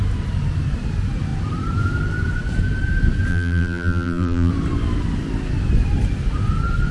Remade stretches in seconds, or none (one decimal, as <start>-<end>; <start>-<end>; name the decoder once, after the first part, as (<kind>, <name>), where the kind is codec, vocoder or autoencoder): 3.3-4.5 (vocoder, BigVGAN v2)